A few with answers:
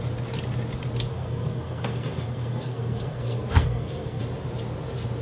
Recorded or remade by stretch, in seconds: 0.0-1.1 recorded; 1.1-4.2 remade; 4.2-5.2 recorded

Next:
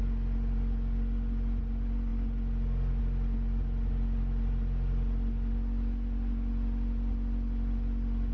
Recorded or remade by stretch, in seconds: 0.0-8.3 recorded

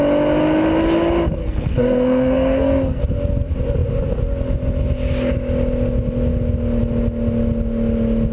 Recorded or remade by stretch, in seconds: 0.0-1.4 recorded; 1.4-3.0 remade; 3.0-8.3 recorded